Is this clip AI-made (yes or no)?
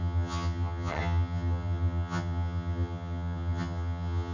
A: yes